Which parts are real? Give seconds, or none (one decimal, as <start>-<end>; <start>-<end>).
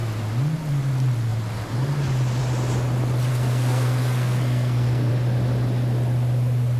0.0-3.3; 5.1-6.8